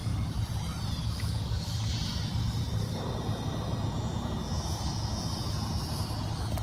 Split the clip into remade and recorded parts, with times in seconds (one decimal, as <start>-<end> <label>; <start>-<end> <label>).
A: 0.0-1.0 remade; 1.0-2.1 recorded; 2.1-3.8 remade; 3.8-6.6 recorded